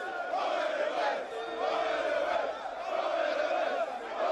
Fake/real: real